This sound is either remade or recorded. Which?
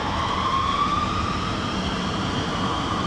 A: remade